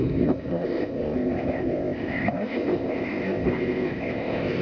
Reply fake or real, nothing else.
fake